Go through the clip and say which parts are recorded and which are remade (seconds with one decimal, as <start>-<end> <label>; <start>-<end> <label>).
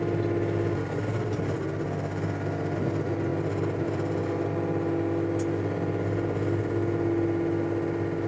0.0-8.3 recorded